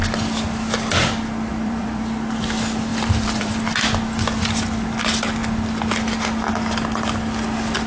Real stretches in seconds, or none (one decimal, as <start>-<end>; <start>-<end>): 0.0-1.5; 2.1-2.9; 3.5-7.9